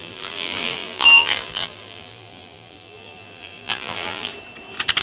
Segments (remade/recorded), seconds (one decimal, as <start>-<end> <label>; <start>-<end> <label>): 0.0-4.3 remade; 4.3-5.0 recorded